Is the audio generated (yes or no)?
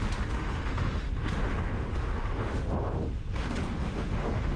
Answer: yes